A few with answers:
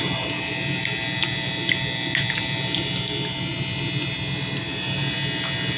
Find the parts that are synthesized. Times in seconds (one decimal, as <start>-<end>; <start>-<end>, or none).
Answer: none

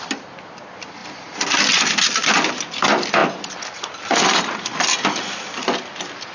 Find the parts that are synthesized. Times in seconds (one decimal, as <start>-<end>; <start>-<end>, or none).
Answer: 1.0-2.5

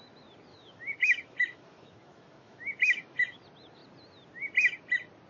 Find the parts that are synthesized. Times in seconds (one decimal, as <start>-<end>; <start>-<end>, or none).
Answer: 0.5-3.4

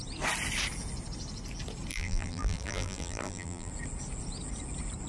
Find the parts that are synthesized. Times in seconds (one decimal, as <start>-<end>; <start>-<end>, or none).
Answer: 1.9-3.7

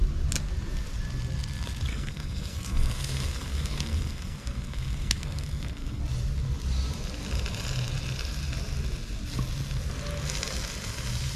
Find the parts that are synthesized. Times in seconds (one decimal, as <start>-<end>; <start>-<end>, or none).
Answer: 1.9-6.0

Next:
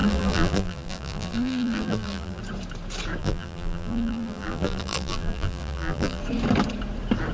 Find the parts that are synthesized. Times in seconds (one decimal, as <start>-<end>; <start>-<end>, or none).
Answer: 0.0-2.4; 3.2-6.2

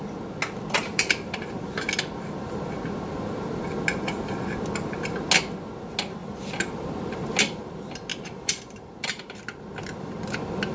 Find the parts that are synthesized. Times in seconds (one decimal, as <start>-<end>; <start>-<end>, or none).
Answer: 0.9-1.9; 6.2-7.3; 8.1-9.4